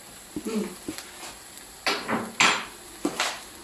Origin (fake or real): real